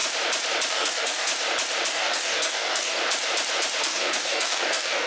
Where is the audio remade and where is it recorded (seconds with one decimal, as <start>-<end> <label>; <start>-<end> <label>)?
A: 0.0-0.7 recorded; 0.7-1.3 remade; 1.3-1.9 recorded; 1.9-3.0 remade; 3.0-3.8 recorded; 3.8-5.1 remade